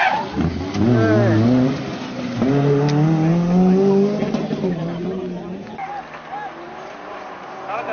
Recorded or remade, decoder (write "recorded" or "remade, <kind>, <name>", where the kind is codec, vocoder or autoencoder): recorded